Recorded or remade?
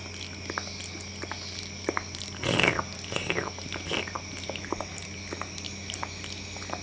recorded